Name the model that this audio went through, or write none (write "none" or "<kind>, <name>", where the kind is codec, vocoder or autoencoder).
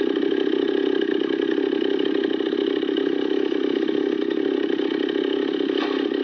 none